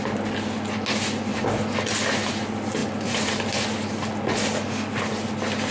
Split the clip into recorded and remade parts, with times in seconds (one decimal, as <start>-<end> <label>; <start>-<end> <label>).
0.0-5.7 recorded